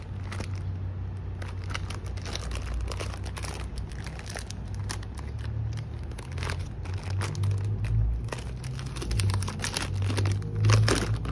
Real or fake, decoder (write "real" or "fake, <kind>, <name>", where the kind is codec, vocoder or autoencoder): real